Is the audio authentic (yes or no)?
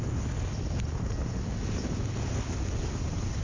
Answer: yes